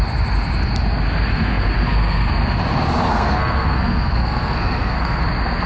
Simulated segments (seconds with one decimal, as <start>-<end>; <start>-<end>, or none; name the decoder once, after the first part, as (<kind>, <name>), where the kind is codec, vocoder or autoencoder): 1.3-2.3 (codec, SNAC); 3.1-5.2